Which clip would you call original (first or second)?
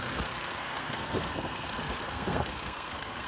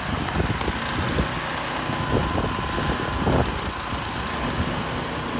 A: second